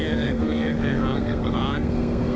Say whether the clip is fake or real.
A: fake